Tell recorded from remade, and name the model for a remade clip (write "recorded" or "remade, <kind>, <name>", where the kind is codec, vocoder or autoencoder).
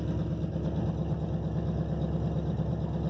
recorded